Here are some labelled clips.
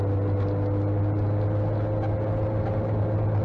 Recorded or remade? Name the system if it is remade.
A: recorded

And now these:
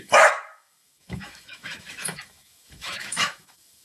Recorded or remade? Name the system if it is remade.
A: remade, autoencoder, DAC-VAE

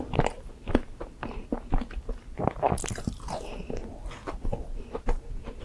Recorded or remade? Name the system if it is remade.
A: recorded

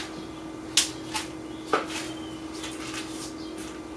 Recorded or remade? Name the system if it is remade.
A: recorded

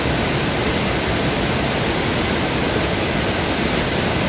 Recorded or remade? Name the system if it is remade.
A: recorded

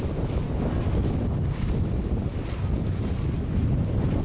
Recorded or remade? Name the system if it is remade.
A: recorded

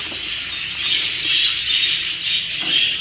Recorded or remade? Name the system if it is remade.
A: recorded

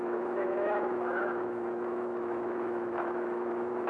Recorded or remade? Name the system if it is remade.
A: remade, autoencoder, DAC-VAE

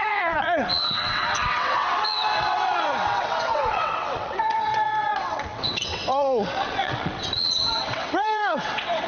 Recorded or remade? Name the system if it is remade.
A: remade, vocoder, WaveNeXt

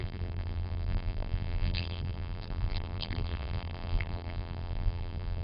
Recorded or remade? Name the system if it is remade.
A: remade, vocoder, BigVGAN v2